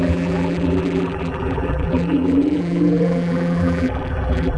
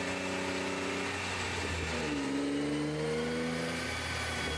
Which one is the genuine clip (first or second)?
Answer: second